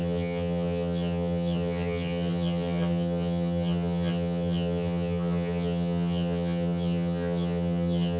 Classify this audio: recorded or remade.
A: remade